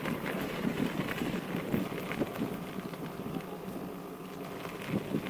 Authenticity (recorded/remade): recorded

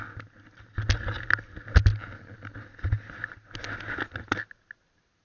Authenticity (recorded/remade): recorded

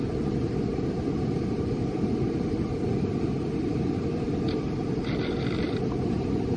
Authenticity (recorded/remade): remade